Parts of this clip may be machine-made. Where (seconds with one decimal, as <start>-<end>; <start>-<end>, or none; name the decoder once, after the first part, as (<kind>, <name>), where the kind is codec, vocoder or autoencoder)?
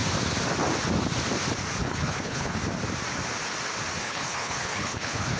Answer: 1.8-2.6 (codec, HILCodec); 4.0-5.4